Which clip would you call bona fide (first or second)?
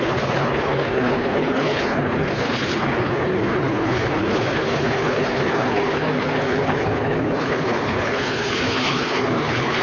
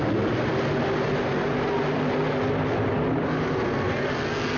second